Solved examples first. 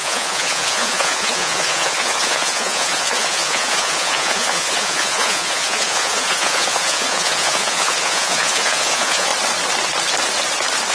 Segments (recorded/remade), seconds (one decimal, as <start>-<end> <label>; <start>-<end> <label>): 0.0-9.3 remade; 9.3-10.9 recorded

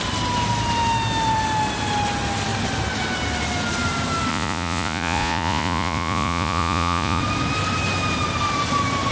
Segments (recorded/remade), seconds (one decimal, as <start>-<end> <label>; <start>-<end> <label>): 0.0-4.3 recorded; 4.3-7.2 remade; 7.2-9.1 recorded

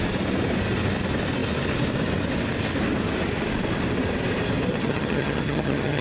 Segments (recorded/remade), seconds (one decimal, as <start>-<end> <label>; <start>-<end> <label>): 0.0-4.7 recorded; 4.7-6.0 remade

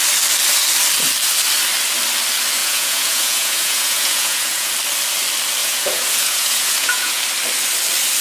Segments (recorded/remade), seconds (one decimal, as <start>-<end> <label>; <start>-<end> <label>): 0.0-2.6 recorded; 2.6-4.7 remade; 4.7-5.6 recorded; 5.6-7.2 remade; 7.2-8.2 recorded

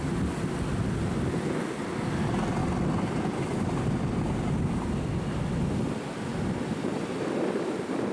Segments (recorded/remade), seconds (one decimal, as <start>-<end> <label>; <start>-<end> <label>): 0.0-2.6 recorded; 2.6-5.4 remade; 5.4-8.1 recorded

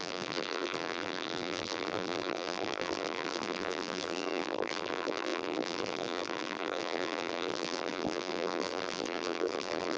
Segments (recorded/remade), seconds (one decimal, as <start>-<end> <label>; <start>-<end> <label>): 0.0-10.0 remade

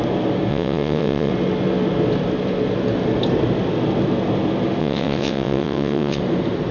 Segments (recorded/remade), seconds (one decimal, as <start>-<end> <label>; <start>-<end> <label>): 0.0-0.5 recorded; 0.5-1.3 remade; 1.3-4.8 recorded; 4.8-6.2 remade; 6.2-6.7 recorded

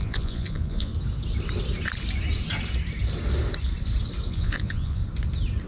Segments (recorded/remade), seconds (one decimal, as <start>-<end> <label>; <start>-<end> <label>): 0.0-0.9 remade; 0.9-4.3 recorded; 4.3-5.0 remade; 5.0-5.7 recorded